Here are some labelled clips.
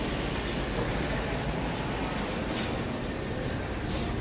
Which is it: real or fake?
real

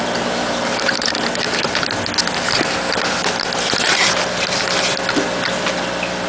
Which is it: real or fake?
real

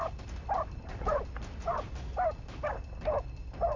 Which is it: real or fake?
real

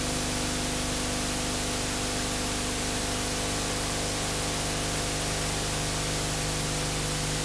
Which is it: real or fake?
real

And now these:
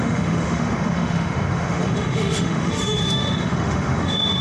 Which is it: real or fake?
fake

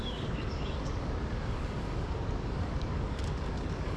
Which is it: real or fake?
fake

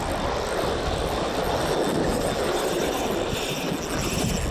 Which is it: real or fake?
real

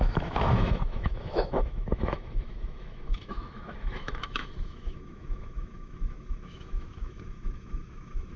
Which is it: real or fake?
fake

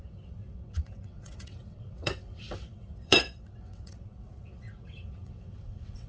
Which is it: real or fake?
fake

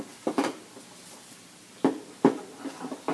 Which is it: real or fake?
real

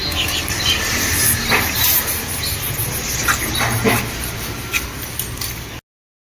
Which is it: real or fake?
real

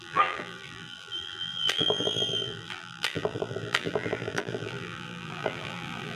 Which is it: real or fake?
fake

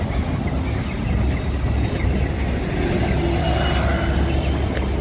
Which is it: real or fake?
real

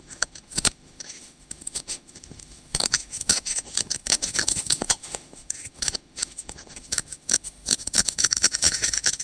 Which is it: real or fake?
fake